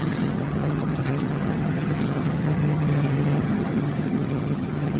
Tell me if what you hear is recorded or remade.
remade